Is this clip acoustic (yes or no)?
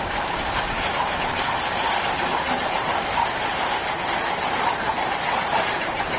no